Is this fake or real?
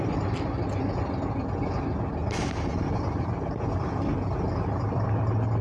real